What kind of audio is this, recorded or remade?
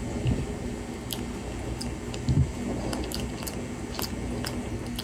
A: recorded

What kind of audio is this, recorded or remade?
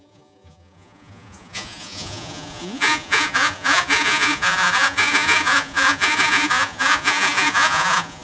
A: remade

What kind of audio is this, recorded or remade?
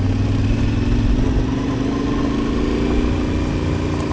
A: recorded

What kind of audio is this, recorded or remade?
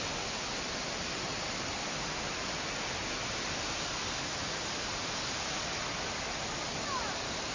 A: recorded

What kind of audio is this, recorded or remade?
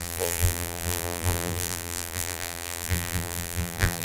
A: remade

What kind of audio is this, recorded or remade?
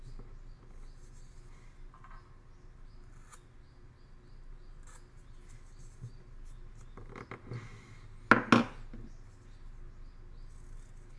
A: recorded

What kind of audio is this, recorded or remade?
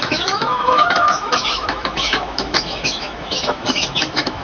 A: remade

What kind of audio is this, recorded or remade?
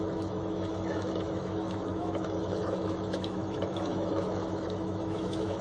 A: remade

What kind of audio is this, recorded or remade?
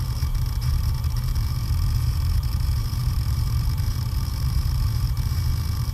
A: remade